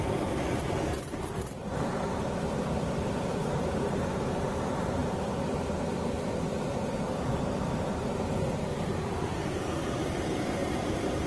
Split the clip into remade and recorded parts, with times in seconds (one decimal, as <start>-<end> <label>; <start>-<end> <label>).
0.0-5.0 remade; 5.0-7.3 recorded; 7.3-11.3 remade